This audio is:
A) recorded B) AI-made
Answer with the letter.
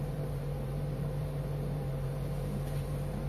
B